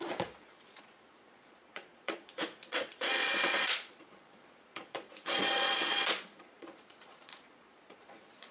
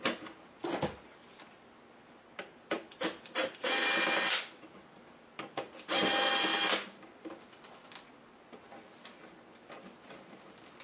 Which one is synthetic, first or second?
first